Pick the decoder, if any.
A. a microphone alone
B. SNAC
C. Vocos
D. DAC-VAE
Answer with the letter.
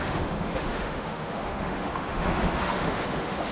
D